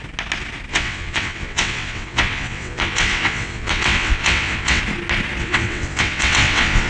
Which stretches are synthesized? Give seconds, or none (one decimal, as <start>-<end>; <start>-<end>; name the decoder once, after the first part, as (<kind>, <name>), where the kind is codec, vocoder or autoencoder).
0.7-4.8 (vocoder, WaveNeXt); 5.4-6.9